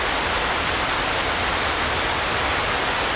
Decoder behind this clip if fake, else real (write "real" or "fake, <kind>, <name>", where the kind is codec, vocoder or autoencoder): real